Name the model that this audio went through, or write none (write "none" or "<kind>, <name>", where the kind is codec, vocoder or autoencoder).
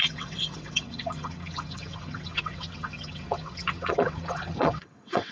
vocoder, WaveNeXt